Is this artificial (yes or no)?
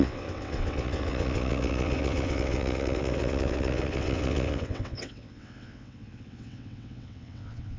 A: yes